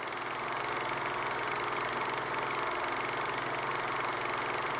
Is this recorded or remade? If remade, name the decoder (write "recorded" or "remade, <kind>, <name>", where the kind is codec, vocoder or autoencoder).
recorded